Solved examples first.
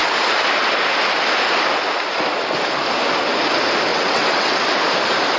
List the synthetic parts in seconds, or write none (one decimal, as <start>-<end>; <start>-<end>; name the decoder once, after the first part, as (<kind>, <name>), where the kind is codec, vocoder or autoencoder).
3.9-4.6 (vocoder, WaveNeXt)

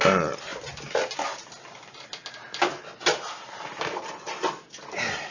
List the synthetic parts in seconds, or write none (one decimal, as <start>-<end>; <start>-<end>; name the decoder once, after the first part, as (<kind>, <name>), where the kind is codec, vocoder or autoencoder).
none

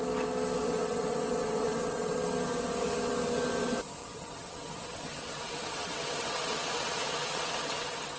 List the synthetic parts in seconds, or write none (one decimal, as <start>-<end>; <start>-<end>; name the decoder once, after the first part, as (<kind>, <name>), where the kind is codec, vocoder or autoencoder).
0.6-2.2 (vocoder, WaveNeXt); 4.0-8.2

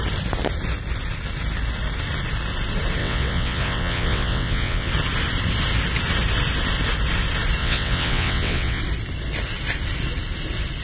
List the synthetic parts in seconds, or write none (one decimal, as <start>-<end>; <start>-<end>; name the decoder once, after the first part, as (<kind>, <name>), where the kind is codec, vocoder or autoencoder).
3.0-4.9 (vocoder, WaveNeXt); 7.6-8.8

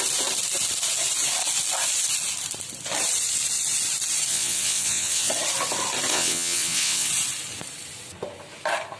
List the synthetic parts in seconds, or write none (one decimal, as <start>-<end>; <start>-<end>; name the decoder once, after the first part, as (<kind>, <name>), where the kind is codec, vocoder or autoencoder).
4.3-5.3 (vocoder, WaveNeXt); 6.1-7.1

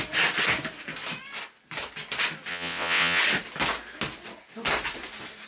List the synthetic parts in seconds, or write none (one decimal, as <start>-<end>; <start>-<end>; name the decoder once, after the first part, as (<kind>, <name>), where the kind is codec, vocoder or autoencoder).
2.5-3.2 (vocoder, WaveNeXt)

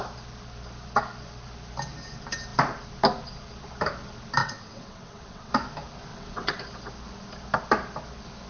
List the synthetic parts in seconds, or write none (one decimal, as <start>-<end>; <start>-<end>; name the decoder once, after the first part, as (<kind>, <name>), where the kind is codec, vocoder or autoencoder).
4.4-5.5 (vocoder, WaveNeXt); 6.1-6.6

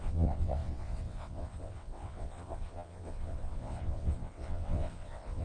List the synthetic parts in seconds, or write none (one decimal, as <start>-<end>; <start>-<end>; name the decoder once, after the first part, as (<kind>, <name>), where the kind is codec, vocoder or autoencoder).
0.0-5.4 (vocoder, WaveNeXt)